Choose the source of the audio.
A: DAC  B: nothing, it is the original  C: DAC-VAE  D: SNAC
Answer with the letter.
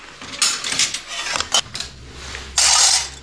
B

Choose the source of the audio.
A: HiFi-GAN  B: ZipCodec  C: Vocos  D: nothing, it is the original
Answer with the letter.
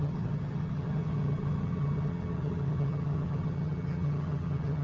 A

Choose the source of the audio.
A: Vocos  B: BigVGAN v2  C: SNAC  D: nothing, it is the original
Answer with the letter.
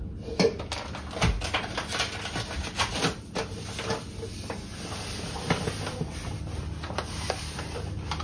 D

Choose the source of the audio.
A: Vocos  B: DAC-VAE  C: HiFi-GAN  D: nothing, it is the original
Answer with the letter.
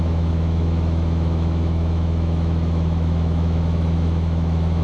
B